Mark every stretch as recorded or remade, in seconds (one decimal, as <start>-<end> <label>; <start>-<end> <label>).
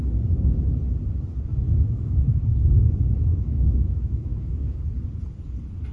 0.0-1.5 recorded; 1.5-2.8 remade; 2.8-3.3 recorded; 3.3-4.8 remade; 4.8-5.9 recorded